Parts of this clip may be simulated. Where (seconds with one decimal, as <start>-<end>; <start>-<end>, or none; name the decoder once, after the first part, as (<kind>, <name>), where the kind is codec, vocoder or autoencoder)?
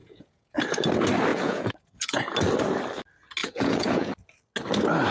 0.0-0.6 (vocoder, Vocos); 1.3-2.2; 3.4-4.1